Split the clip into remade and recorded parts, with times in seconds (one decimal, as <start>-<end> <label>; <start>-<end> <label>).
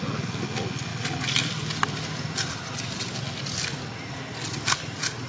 0.0-5.3 recorded